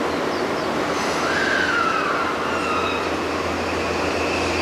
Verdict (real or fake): real